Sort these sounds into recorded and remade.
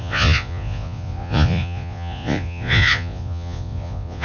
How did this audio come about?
remade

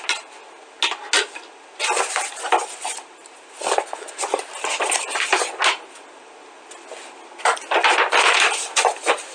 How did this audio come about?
recorded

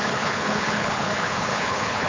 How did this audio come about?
remade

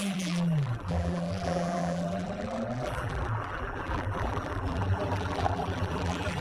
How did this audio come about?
remade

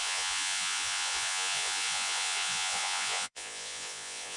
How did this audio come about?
remade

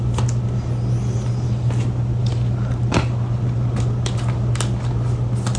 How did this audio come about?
recorded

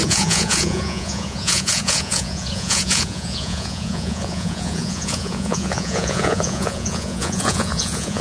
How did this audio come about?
remade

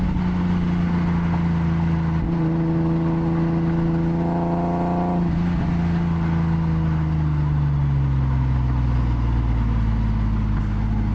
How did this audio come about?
recorded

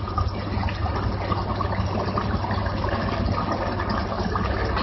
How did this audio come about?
recorded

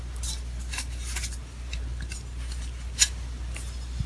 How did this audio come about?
recorded